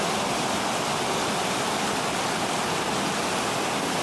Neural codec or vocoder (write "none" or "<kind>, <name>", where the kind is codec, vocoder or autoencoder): none